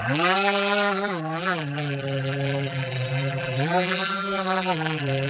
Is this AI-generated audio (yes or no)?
yes